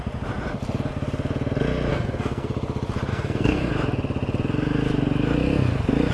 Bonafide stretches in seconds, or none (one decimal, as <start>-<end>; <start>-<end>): 0.0-1.9; 2.5-3.1; 3.7-6.1